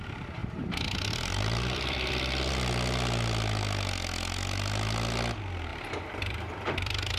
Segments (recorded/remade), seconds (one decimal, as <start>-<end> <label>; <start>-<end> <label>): 0.0-0.4 recorded; 0.4-2.5 remade; 2.5-5.7 recorded; 5.7-7.2 remade